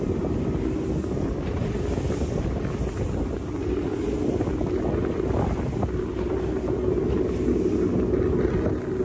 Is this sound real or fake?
real